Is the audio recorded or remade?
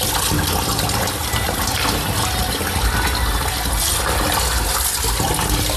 recorded